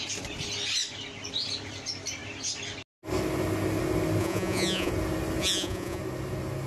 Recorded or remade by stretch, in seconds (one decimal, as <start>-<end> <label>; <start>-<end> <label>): 0.0-4.2 recorded; 4.2-4.9 remade; 4.9-5.4 recorded; 5.4-6.0 remade; 6.0-6.7 recorded

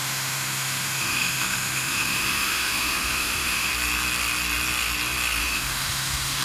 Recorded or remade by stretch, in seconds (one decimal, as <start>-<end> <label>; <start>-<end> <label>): 0.0-3.7 remade; 3.7-5.4 recorded; 5.4-6.4 remade

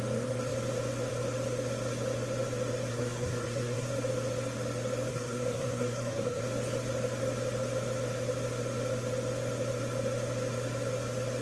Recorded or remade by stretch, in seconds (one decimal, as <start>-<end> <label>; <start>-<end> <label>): 0.0-2.9 recorded; 2.9-3.9 remade; 3.9-5.1 recorded; 5.1-6.4 remade; 6.4-11.4 recorded

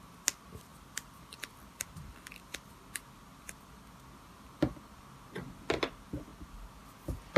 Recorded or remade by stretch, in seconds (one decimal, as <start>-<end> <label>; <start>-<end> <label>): 0.0-7.4 recorded